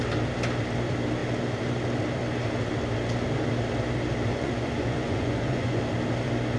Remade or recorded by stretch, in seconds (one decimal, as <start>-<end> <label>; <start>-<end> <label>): 0.0-4.3 recorded; 4.3-5.8 remade; 5.8-6.6 recorded